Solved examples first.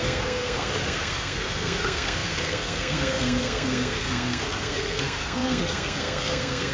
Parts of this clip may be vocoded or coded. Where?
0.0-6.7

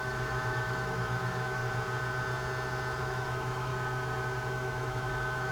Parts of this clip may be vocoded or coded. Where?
0.0-1.6; 3.0-3.7; 4.5-5.5

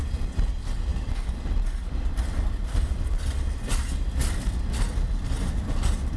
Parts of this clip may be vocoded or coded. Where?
none

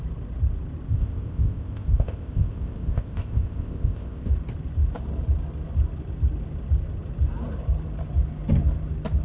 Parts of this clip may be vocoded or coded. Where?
0.9-4.3

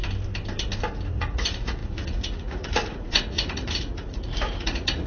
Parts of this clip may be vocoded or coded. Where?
1.1-5.1

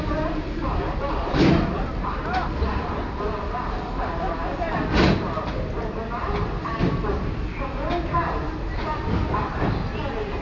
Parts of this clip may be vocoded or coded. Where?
none

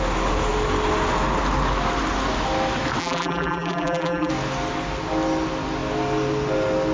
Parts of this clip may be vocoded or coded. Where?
3.0-4.3

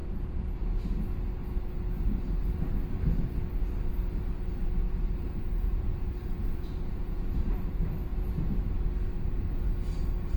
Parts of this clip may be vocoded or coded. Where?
0.0-0.6; 4.8-7.5